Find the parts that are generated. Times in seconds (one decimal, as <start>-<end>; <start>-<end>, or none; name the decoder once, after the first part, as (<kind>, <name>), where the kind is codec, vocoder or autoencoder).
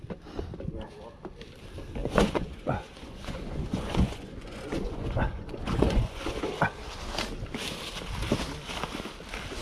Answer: 2.0-6.4 (vocoder, Vocos)